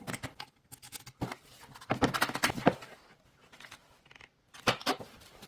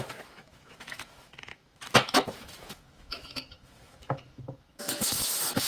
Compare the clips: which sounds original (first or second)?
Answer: first